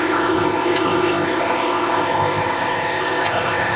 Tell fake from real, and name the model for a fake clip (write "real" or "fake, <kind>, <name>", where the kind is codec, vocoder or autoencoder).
fake, codec, ZipCodec